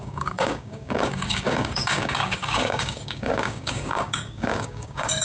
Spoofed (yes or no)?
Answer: yes